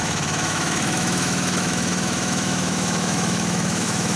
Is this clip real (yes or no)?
no